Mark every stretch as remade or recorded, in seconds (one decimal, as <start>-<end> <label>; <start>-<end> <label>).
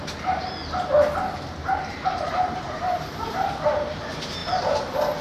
0.0-1.6 recorded; 1.6-3.3 remade; 3.3-5.2 recorded